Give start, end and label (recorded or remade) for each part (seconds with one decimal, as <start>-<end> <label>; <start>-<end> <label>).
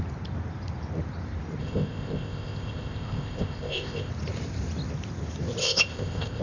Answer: 0.0-1.6 recorded; 1.6-4.1 remade; 4.1-5.6 recorded; 5.6-6.4 remade